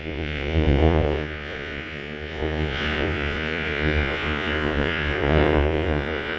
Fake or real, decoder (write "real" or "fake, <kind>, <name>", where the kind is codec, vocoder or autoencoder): fake, vocoder, Vocos